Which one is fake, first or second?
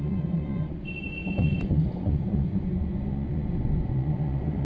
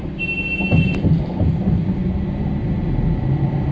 first